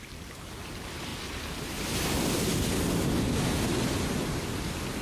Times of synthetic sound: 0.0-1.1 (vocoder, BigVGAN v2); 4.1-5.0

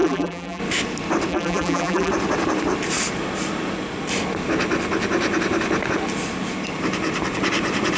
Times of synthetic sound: 0.0-0.6 (vocoder, BigVGAN v2); 1.3-2.1